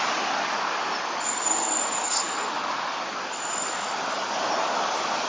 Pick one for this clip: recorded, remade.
recorded